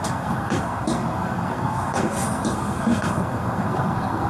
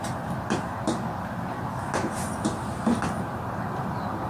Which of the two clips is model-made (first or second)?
first